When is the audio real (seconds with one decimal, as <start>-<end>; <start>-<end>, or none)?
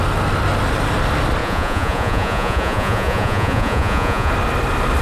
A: 0.0-1.4; 4.3-5.0